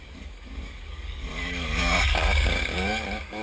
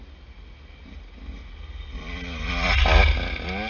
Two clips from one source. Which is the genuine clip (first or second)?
second